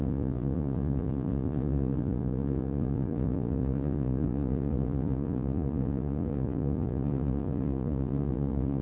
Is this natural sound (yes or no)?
no